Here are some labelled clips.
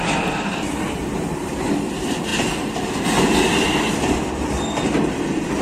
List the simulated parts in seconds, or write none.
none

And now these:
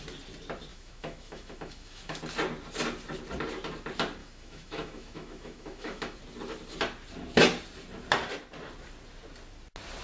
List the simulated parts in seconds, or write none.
0.7-2.2 (autoencoder, DAC-VAE); 4.2-6.2

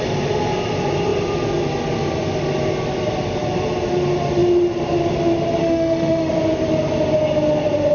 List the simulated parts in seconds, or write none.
5.6-6.3 (autoencoder, DAC-VAE)

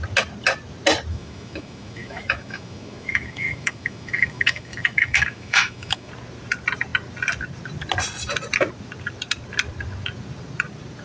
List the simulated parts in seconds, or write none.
1.1-6.1 (autoencoder, DAC-VAE)

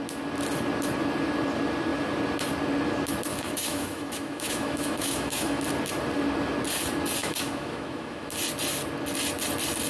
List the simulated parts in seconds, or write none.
3.3-5.6 (autoencoder, DAC-VAE); 7.2-8.3

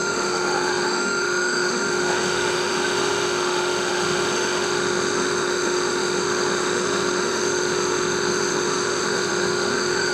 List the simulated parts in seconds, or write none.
0.0-10.1 (autoencoder, DAC-VAE)

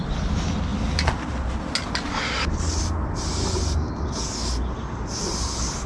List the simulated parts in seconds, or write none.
none

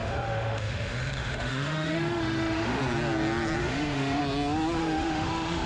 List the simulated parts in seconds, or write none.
0.0-2.8 (autoencoder, DAC-VAE); 3.6-4.2; 4.8-5.7